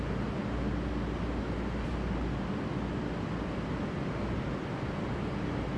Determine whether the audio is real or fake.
real